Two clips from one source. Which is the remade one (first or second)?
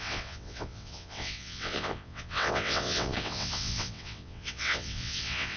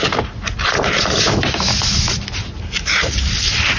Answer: first